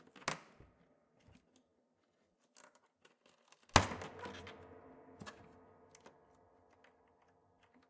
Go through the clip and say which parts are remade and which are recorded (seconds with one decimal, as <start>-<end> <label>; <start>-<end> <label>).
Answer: 0.0-7.9 recorded